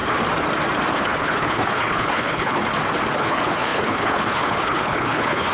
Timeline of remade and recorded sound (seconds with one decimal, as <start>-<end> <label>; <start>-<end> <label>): 0.0-0.9 recorded; 0.9-2.6 remade; 2.6-3.2 recorded; 3.2-5.5 remade